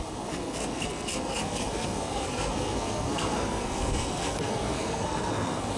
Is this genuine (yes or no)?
no